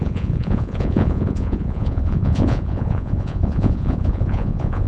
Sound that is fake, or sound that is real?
fake